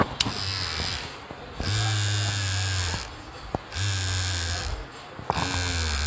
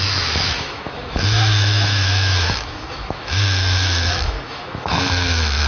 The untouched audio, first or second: first